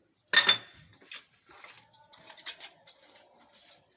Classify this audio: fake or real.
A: real